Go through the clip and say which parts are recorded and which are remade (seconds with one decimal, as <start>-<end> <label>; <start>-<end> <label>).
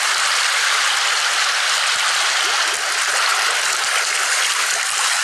0.0-5.2 recorded